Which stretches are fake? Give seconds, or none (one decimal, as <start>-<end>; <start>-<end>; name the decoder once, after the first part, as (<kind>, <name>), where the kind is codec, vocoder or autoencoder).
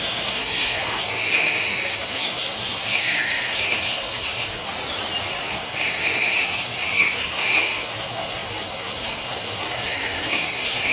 0.0-4.7 (codec, SNAC); 5.5-10.9